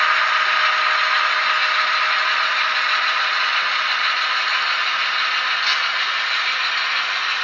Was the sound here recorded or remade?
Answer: recorded